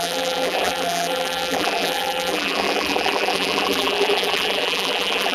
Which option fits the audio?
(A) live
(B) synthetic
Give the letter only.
B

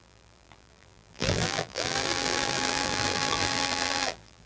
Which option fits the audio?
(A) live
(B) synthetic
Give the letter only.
B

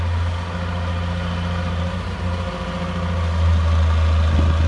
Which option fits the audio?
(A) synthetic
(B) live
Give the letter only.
B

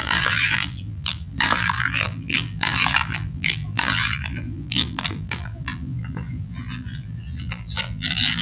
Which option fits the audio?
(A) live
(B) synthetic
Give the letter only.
B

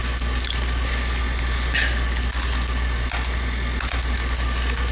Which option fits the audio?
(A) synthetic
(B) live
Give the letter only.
B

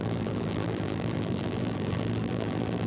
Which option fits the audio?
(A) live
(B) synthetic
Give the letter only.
B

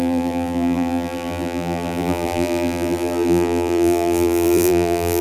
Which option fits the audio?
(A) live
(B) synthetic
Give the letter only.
B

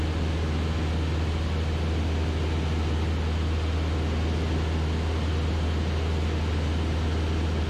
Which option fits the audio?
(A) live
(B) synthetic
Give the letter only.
A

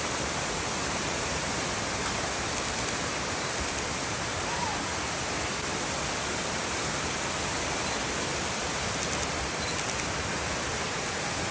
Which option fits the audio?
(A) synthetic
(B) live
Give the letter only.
A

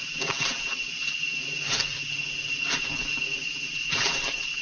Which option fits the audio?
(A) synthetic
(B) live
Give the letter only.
B